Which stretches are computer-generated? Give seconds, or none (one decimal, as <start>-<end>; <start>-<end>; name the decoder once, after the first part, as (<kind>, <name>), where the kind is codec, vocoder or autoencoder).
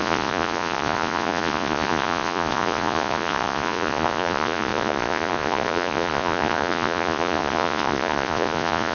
0.0-8.9 (vocoder, Vocos)